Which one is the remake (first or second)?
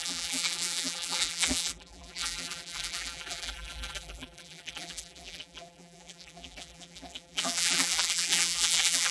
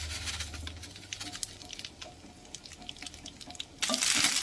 first